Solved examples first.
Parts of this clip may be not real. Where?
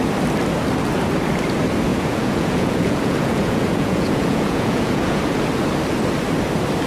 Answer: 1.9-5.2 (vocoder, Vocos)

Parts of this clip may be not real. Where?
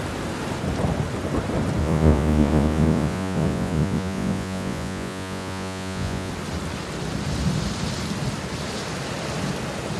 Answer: 1.8-6.3 (vocoder, Vocos)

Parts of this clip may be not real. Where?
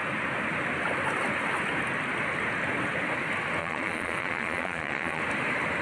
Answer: 3.6-5.2 (vocoder, Vocos)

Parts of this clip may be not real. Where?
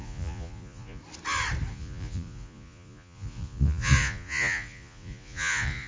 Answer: 0.0-1.0 (vocoder, Vocos); 1.7-5.9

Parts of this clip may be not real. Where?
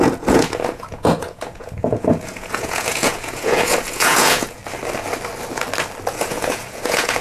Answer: 0.0-4.6 (vocoder, Vocos); 6.1-7.2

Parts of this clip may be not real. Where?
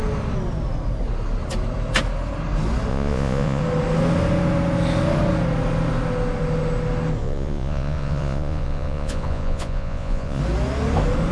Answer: 2.9-3.6 (vocoder, Vocos); 7.2-10.4